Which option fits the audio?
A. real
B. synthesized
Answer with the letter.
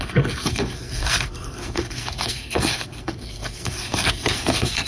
B